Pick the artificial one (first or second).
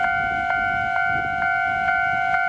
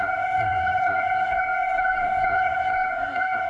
second